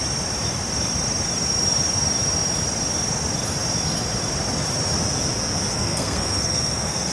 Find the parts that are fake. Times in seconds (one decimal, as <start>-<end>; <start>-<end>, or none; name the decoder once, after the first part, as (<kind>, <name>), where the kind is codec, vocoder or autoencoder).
5.7-7.1 (codec, SNAC)